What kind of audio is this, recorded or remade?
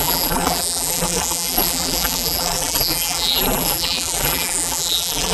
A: remade